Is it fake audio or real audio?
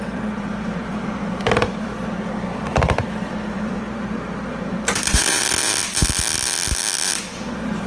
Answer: fake